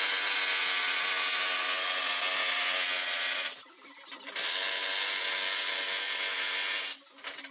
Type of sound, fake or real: real